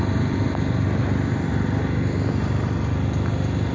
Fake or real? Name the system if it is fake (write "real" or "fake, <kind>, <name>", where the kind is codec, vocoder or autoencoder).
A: real